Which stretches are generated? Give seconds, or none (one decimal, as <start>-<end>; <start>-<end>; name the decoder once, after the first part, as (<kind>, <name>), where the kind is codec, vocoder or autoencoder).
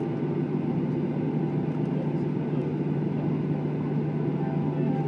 none